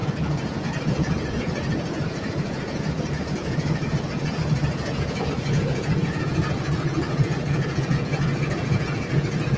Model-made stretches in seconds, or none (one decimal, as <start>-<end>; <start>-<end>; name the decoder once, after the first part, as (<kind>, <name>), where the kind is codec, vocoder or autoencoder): 0.0-9.6 (vocoder, Vocos)